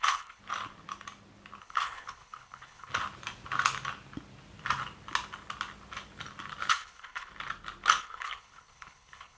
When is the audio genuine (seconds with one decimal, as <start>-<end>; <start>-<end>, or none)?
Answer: 0.4-1.6; 2.9-6.7; 7.3-8.0